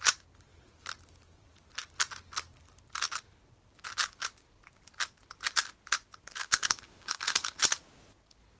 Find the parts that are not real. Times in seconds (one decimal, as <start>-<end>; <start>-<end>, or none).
6.4-7.6